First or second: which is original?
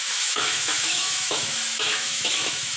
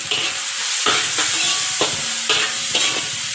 second